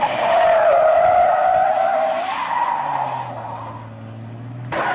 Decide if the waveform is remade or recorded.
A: recorded